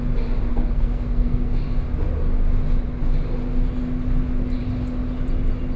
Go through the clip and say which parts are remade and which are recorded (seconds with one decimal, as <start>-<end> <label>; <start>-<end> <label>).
0.0-0.5 recorded; 0.5-1.6 remade; 1.6-5.8 recorded

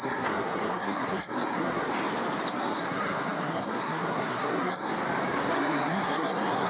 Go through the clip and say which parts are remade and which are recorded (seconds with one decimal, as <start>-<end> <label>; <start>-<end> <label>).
0.0-1.9 remade; 1.9-2.5 recorded; 2.5-4.9 remade; 4.9-5.5 recorded; 5.5-6.7 remade